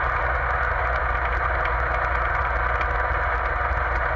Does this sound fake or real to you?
real